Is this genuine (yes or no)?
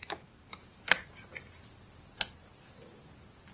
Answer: yes